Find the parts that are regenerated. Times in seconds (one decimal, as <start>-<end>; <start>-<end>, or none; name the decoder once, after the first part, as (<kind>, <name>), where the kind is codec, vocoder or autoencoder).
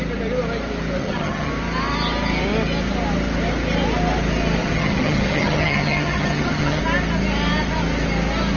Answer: 1.0-1.5 (vocoder, HiFi-GAN); 4.6-6.8